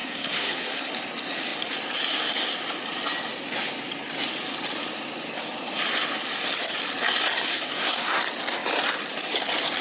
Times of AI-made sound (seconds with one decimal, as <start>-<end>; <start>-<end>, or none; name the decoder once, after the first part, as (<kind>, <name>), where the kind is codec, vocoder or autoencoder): 0.0-0.9 (codec, SNAC); 7.5-8.2